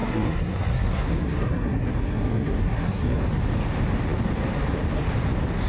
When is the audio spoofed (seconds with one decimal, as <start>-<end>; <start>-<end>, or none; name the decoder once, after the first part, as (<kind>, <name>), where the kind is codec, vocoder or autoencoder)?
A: 0.0-3.2 (codec, SNAC)